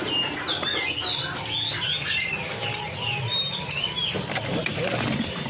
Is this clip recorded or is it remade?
recorded